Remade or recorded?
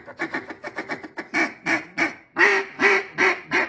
recorded